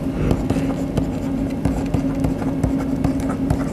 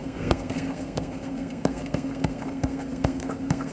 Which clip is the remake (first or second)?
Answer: second